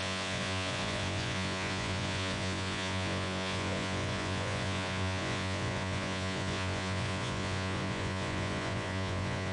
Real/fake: fake